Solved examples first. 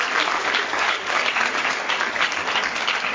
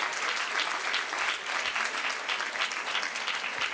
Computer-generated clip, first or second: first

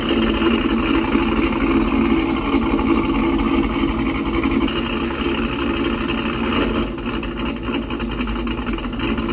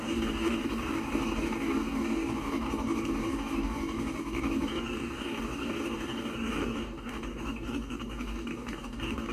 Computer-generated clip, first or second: second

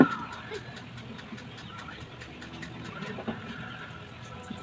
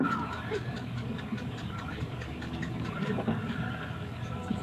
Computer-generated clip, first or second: second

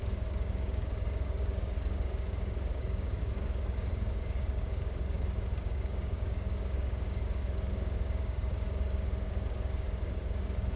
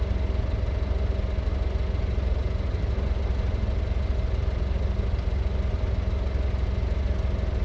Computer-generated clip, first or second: first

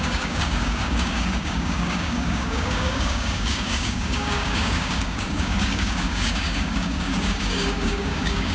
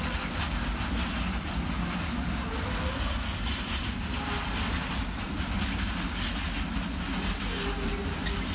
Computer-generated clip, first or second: first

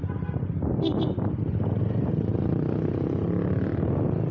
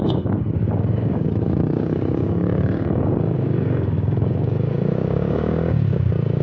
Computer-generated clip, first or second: second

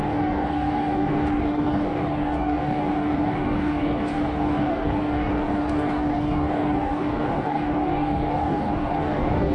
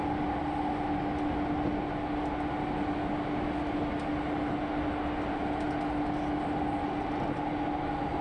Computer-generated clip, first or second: first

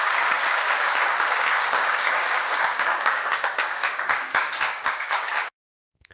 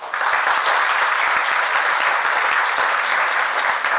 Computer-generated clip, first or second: first